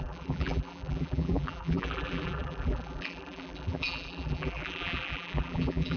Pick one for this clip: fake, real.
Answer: fake